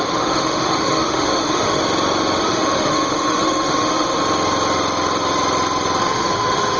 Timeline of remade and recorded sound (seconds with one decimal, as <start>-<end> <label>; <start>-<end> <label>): 0.0-1.8 remade; 1.8-2.4 recorded; 2.4-4.2 remade; 4.2-6.0 recorded; 6.0-6.8 remade